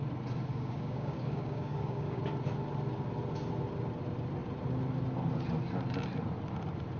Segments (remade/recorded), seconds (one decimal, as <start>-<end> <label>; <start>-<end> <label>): 0.0-0.5 recorded; 0.5-2.2 remade; 2.2-7.0 recorded